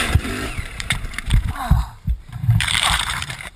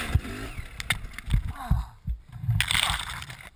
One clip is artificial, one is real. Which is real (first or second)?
second